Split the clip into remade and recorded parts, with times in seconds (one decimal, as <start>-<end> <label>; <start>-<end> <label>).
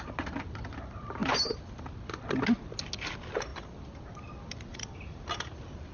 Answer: 0.0-4.7 recorded; 4.7-5.5 remade; 5.5-5.9 recorded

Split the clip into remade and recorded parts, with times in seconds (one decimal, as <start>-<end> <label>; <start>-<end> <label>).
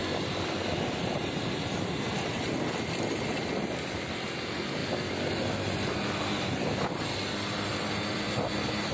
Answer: 0.0-8.9 recorded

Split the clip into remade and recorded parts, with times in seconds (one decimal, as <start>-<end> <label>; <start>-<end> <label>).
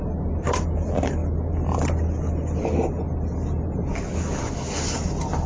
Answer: 0.0-5.5 recorded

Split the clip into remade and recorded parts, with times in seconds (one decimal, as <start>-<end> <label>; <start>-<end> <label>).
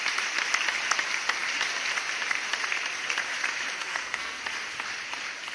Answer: 0.0-3.8 recorded; 3.8-4.4 remade; 4.4-5.5 recorded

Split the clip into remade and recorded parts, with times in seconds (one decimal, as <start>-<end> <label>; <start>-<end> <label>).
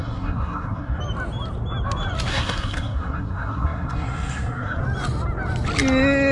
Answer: 0.0-1.0 remade; 1.0-2.3 recorded; 2.3-4.8 remade; 4.8-6.3 recorded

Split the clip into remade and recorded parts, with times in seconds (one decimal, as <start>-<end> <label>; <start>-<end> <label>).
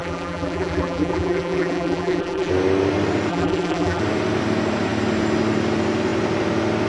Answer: 0.0-2.5 remade; 2.5-3.3 recorded; 3.3-4.0 remade; 4.0-6.9 recorded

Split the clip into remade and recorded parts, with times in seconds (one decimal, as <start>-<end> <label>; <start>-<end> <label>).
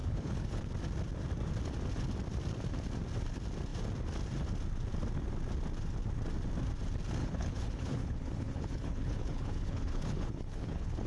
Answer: 0.0-0.6 remade; 0.6-7.2 recorded; 7.2-11.1 remade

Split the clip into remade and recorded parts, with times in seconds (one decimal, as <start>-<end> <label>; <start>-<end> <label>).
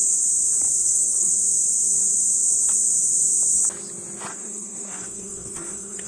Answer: 0.0-0.8 recorded; 0.8-1.3 remade; 1.3-4.3 recorded; 4.3-6.1 remade